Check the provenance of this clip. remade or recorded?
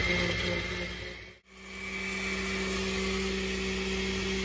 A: recorded